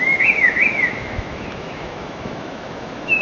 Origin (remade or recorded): remade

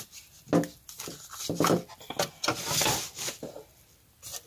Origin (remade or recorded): recorded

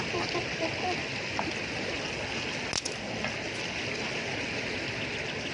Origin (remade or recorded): recorded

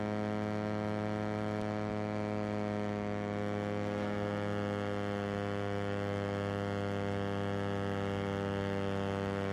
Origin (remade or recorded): recorded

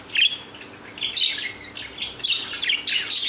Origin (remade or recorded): recorded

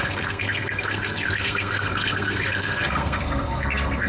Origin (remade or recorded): remade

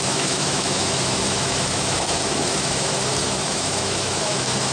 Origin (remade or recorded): remade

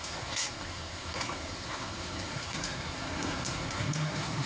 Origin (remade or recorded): remade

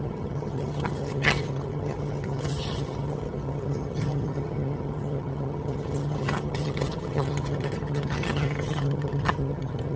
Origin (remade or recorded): remade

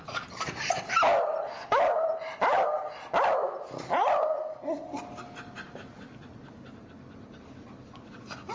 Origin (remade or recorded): recorded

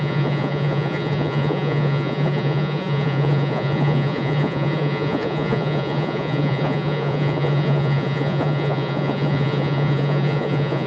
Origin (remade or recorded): remade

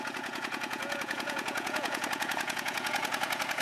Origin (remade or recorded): remade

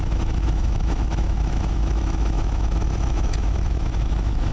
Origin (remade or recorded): remade